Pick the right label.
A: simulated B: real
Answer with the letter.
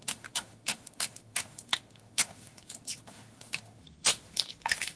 A